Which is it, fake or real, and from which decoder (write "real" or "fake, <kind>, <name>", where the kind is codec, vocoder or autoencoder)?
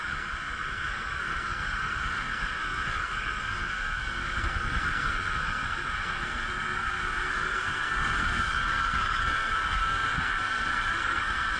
fake, codec, SNAC